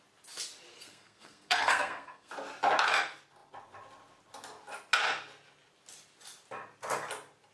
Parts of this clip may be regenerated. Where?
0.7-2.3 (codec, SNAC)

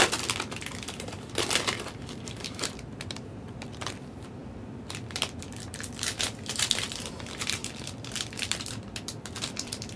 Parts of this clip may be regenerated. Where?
0.0-10.0 (vocoder, BigVGAN v2)

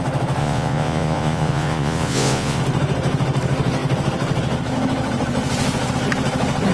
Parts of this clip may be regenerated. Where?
0.4-2.6 (vocoder, Vocos)

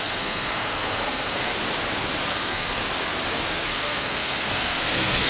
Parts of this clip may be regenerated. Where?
0.0-1.5 (codec, SNAC); 2.3-2.8; 3.5-5.3

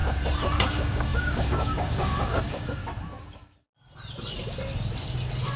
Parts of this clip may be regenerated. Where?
0.7-2.8 (codec, DAC)

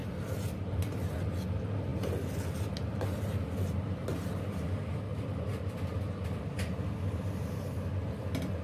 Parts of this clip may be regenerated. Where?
0.0-1.1 (vocoder, BigVGAN v2); 5.1-5.7

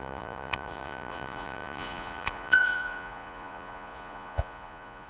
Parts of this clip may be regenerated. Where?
0.0-5.1 (vocoder, Vocos)